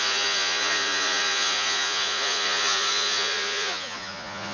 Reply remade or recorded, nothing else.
remade